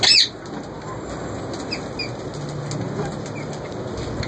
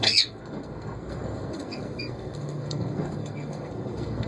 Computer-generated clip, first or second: second